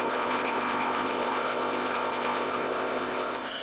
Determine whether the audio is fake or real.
fake